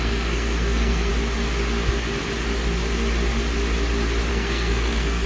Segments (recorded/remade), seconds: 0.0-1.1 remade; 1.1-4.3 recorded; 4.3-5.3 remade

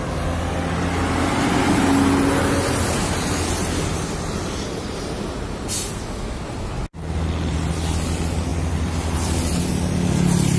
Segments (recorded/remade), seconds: 0.0-10.6 recorded

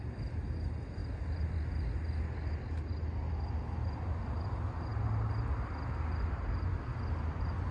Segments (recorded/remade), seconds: 0.0-7.7 recorded

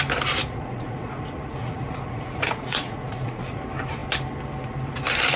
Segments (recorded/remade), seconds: 0.0-0.4 recorded; 0.4-3.6 remade; 3.6-5.4 recorded

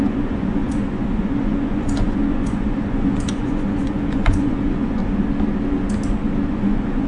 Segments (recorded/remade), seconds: 0.0-5.0 remade; 5.0-6.5 recorded; 6.5-7.1 remade